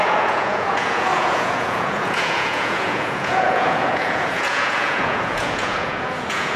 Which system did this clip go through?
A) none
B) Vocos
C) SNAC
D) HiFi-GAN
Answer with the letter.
B